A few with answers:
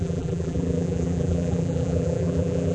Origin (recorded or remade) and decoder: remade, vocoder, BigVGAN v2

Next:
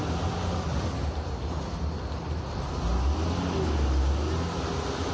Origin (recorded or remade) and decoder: recorded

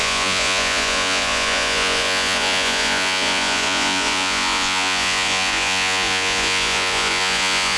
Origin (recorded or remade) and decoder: remade, vocoder, Vocos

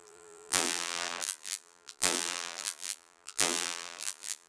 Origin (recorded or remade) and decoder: remade, vocoder, BigVGAN v2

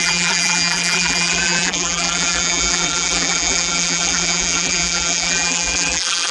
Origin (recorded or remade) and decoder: remade, vocoder, BigVGAN v2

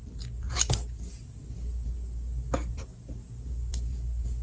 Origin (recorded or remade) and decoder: recorded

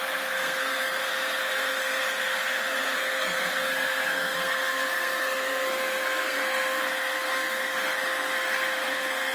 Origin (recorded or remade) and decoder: remade, codec, SNAC